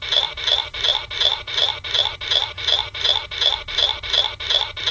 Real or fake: real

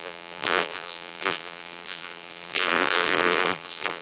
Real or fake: fake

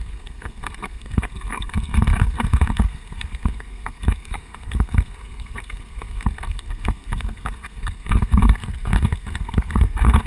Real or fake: fake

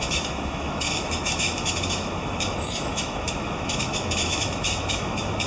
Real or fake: fake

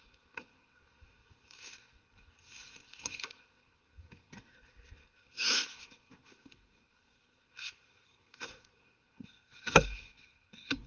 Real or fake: fake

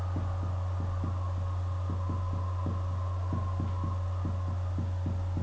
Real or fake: real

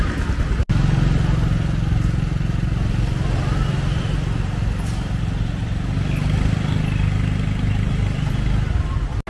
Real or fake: real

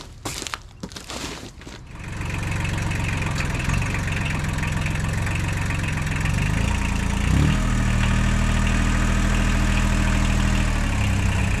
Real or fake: real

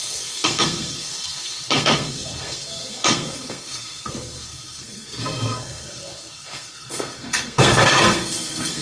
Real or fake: fake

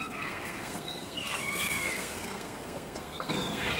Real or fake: fake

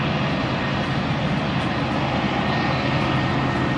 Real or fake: real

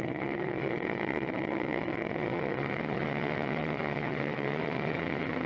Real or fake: fake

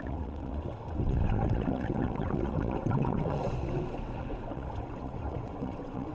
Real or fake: fake